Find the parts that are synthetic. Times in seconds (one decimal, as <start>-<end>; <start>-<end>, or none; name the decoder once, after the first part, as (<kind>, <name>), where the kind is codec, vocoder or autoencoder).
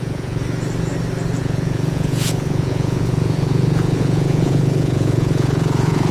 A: 0.0-0.4 (vocoder, Vocos); 1.4-6.1